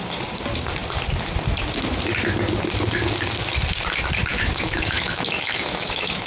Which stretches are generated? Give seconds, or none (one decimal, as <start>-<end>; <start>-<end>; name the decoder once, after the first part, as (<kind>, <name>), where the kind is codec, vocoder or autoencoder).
4.3-6.3 (autoencoder, DAC-VAE)